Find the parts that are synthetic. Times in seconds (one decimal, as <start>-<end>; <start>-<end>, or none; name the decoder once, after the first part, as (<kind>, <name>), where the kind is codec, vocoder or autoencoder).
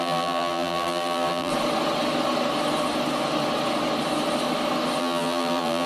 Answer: 0.0-1.5 (vocoder, BigVGAN v2); 5.0-5.9